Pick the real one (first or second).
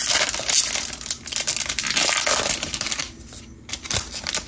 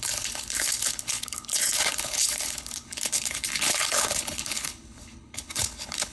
first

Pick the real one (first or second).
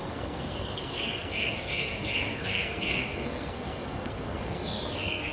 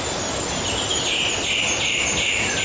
second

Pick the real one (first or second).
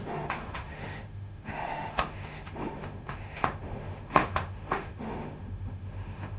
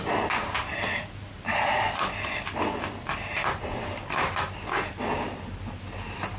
second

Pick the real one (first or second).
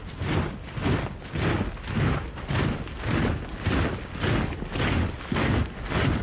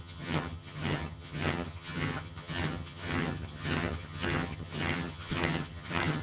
first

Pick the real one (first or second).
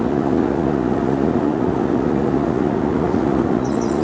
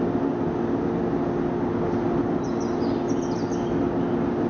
second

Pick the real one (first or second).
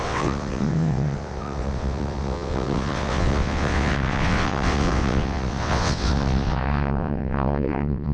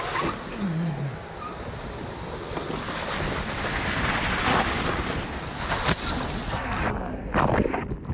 second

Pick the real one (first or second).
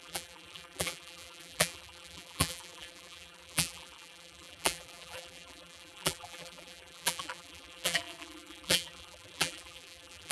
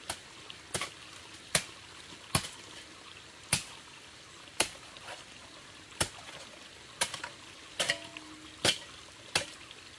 second